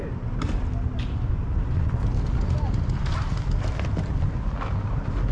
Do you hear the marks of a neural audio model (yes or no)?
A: no